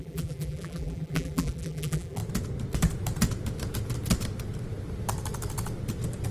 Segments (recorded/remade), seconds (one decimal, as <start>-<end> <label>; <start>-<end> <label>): 0.0-2.2 remade; 2.2-6.3 recorded

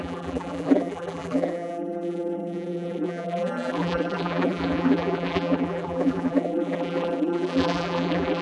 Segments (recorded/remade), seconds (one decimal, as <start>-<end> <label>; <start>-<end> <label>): 0.0-8.4 remade

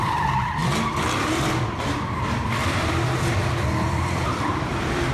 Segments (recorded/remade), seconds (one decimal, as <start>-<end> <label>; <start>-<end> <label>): 0.0-0.6 remade; 0.6-1.4 recorded; 1.4-5.1 remade

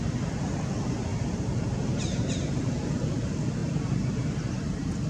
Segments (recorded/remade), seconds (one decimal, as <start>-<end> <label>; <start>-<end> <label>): 0.0-1.1 recorded; 1.1-2.6 remade; 2.6-3.6 recorded; 3.6-5.1 remade